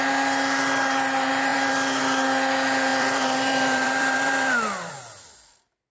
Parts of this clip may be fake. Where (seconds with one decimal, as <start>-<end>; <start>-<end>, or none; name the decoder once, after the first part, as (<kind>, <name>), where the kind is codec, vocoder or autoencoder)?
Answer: 1.5-2.0 (vocoder, BigVGAN v2); 2.9-4.9